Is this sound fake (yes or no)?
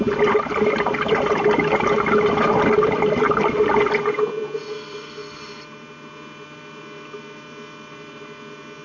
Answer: no